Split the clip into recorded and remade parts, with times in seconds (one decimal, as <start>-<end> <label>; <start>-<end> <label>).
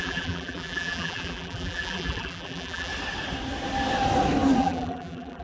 0.0-2.9 remade; 2.9-4.6 recorded; 4.6-5.4 remade